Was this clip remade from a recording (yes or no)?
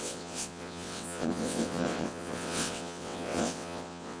yes